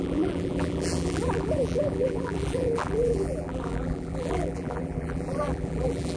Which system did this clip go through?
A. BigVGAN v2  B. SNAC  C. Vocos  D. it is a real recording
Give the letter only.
A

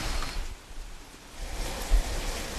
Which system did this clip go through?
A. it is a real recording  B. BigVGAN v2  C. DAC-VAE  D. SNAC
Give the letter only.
A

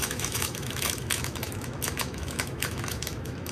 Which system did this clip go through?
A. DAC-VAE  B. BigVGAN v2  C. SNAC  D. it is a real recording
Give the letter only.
A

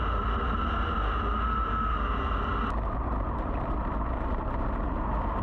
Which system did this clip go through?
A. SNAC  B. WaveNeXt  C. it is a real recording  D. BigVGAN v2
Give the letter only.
C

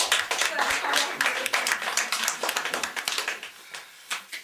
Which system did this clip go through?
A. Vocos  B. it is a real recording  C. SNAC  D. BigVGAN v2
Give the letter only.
B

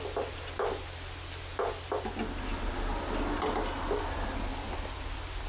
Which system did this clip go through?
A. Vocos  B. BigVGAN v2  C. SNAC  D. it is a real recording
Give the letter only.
D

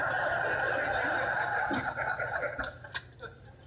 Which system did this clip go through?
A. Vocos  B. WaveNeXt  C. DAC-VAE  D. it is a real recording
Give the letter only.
D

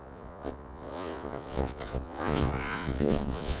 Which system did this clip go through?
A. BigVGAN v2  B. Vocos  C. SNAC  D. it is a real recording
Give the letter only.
B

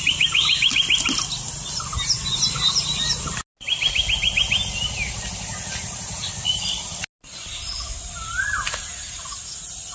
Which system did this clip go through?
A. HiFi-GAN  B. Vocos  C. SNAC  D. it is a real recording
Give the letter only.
D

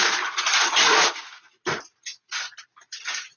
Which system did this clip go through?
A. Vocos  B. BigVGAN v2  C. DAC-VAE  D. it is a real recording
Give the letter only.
D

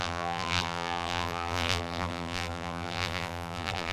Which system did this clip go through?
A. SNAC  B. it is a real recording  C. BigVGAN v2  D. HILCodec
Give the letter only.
C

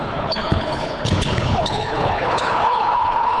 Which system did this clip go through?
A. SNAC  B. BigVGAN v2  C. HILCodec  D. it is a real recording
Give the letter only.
C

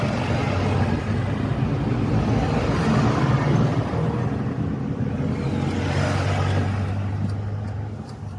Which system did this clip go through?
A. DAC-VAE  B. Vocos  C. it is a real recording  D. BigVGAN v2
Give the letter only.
C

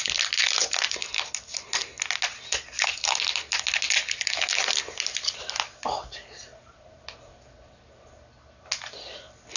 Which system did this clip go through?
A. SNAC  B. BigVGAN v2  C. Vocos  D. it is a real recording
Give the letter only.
D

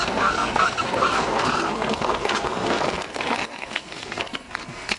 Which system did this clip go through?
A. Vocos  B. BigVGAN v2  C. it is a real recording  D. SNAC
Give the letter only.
D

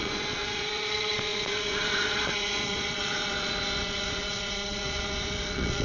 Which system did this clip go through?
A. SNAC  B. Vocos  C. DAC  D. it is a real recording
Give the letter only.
B